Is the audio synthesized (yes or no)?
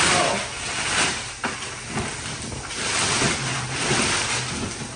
no